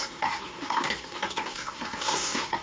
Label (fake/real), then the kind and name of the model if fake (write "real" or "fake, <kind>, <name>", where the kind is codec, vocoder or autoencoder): fake, codec, SNAC